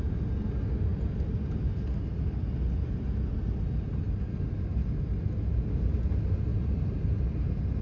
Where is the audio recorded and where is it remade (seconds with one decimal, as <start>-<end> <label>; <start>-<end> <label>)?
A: 0.0-7.8 recorded